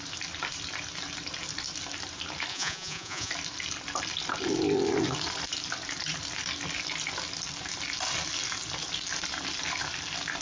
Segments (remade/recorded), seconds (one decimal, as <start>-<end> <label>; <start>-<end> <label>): 0.0-2.5 recorded; 2.5-3.3 remade; 3.3-10.4 recorded